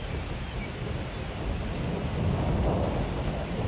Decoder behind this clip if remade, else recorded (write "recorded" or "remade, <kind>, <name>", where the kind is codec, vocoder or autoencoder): recorded